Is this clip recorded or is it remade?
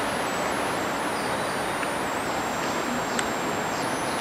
recorded